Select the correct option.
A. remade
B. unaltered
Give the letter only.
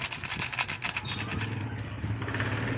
B